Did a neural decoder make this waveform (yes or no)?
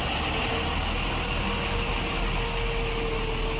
no